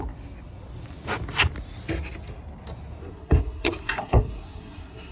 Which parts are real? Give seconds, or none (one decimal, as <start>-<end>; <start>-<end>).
0.0-3.1

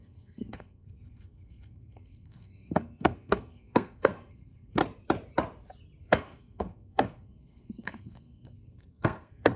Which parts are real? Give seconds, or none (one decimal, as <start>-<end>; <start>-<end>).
4.8-6.0

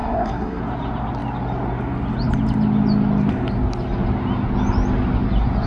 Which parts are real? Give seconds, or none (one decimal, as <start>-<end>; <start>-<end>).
0.6-5.7